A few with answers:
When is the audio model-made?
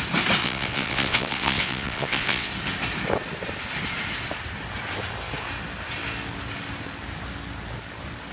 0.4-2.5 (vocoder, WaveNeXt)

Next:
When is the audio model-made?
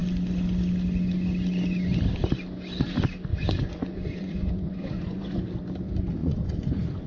3.3-5.4 (vocoder, Vocos); 6.2-7.1